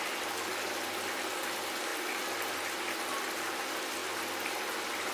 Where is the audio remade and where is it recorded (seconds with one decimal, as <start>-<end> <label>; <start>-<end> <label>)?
0.0-1.9 recorded; 1.9-2.6 remade; 2.6-5.1 recorded